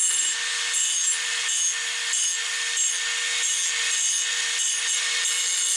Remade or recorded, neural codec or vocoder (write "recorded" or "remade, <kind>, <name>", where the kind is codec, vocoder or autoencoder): recorded